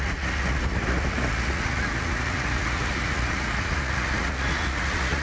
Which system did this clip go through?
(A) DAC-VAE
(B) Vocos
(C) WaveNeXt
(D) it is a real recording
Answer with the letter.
B